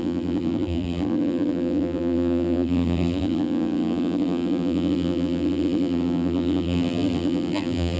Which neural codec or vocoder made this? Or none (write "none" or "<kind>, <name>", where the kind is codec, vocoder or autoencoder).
vocoder, BigVGAN v2